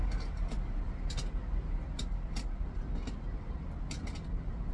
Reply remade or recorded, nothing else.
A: recorded